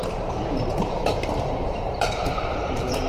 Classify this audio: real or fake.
fake